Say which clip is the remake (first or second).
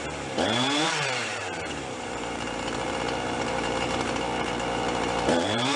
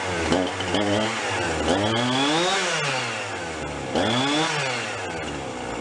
first